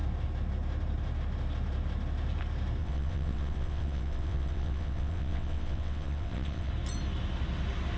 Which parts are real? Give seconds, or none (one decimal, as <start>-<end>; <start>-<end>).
0.0-2.8; 6.7-8.0